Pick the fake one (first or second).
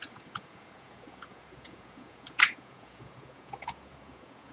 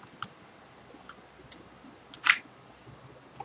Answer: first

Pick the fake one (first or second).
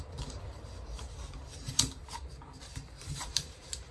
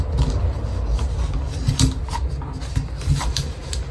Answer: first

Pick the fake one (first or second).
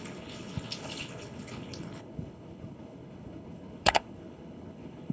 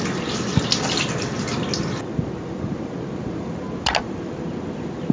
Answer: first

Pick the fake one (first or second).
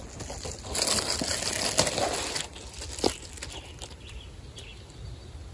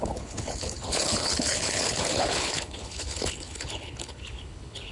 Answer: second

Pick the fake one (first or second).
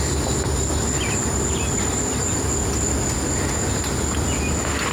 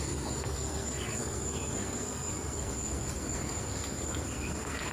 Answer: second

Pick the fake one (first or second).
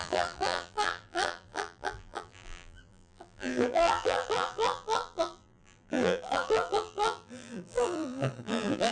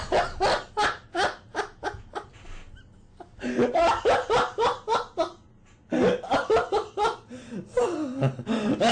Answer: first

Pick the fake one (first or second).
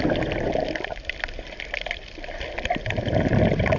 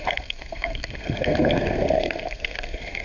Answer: second